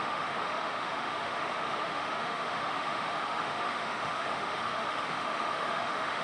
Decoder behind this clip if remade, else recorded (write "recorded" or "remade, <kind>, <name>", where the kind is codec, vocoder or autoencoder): remade, autoencoder, DAC-VAE